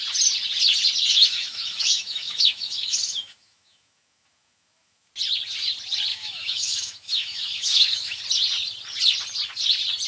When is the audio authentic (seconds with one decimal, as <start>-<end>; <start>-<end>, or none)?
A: 0.0-1.1; 5.1-6.1; 8.2-10.1